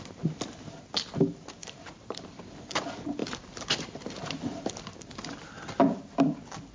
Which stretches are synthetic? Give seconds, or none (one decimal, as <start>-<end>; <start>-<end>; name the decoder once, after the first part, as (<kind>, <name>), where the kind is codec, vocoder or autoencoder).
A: 1.6-2.4 (vocoder, BigVGAN v2); 3.2-4.7